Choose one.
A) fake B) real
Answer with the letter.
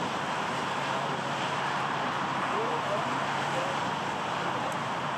A